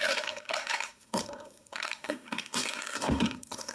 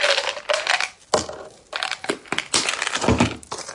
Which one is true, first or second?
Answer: second